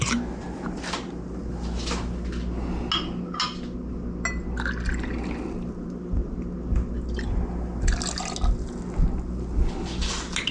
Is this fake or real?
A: real